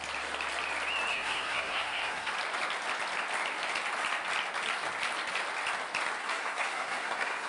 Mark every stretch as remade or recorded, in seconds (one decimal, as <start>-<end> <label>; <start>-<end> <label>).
0.0-1.1 recorded; 1.1-2.3 remade; 2.3-6.2 recorded; 6.2-7.5 remade